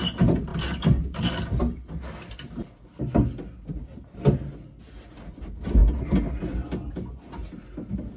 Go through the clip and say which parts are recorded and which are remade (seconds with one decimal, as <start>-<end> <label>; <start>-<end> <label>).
0.0-8.2 recorded